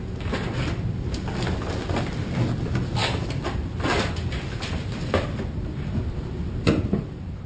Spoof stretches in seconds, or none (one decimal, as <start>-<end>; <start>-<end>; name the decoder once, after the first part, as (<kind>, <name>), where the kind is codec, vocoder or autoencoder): none